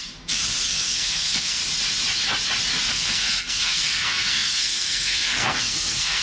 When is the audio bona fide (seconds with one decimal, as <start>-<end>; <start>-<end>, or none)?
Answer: 1.6-2.9